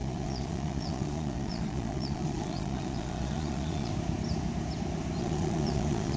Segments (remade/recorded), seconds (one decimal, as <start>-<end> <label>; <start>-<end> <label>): 0.0-3.9 remade; 3.9-5.2 recorded; 5.2-6.2 remade